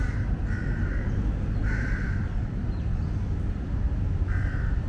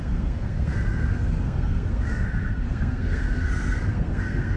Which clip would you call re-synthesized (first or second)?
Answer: second